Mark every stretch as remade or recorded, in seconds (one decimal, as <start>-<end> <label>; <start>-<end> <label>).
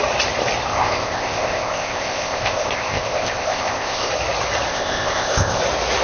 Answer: 0.0-0.7 recorded; 0.7-4.1 remade; 4.1-4.7 recorded; 4.7-5.6 remade; 5.6-6.0 recorded